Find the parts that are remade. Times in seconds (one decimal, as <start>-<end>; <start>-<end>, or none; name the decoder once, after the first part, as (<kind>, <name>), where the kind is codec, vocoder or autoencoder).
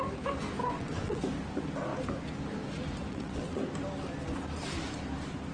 0.6-1.2 (vocoder, WaveNeXt); 3.1-3.6